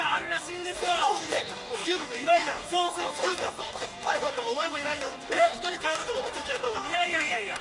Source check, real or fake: fake